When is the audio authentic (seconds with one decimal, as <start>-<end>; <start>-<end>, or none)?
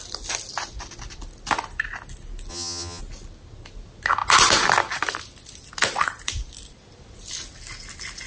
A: 0.0-2.5; 3.0-8.3